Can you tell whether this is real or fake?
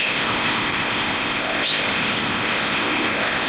fake